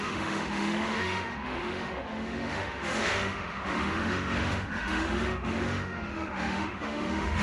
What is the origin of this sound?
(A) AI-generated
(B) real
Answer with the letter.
A